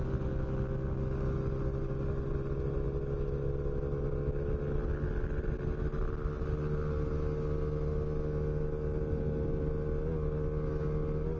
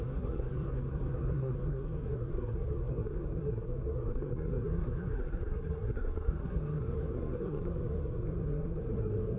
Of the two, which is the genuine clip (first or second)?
first